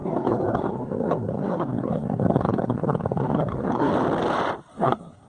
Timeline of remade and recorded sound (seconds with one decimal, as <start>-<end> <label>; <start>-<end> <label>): 0.0-3.9 remade; 3.9-4.7 recorded; 4.7-5.3 remade

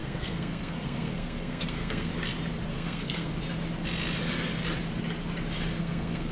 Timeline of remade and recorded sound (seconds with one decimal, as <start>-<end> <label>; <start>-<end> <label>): 0.0-2.1 remade; 2.1-2.7 recorded; 2.7-3.3 remade; 3.3-5.8 recorded; 5.8-6.3 remade